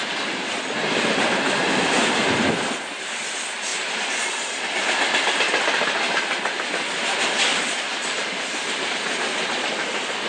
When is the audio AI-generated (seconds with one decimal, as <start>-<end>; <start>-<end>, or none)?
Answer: 3.7-4.6; 7.5-8.9